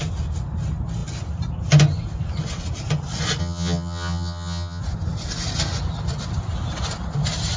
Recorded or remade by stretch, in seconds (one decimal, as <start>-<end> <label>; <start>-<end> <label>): 0.0-3.4 recorded; 3.4-4.8 remade; 4.8-7.6 recorded